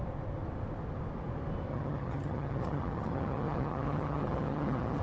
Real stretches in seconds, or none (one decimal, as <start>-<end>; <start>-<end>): 0.0-1.7